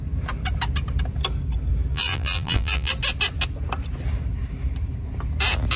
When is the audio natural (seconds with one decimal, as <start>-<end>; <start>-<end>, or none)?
0.0-1.9; 2.9-5.8